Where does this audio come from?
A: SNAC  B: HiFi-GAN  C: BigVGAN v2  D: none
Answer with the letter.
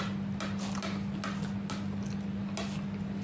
D